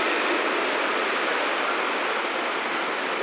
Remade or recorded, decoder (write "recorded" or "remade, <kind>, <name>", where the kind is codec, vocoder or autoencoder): recorded